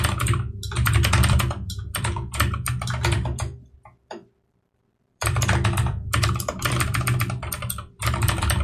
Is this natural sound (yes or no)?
no